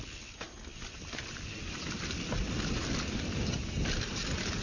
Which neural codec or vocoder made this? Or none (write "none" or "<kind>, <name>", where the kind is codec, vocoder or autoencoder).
none